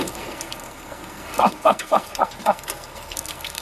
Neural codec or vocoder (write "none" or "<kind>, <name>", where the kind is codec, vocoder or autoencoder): codec, SNAC